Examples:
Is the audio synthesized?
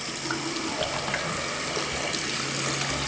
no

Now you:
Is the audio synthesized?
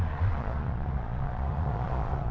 yes